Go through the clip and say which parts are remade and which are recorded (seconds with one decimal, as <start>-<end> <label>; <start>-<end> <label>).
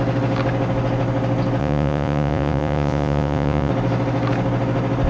0.0-1.6 recorded; 1.6-3.7 remade; 3.7-5.1 recorded